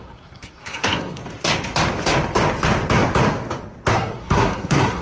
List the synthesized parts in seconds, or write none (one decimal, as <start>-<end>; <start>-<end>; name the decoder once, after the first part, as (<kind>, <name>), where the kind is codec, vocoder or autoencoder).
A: 0.0-1.2 (codec, SNAC); 3.9-5.0